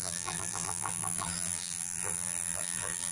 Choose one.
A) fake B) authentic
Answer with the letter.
A